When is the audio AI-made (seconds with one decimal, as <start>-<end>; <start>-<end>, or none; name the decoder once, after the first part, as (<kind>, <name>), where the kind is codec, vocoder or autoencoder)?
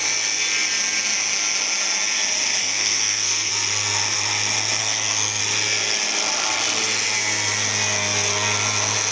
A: 2.6-3.5 (codec, SNAC); 4.8-5.4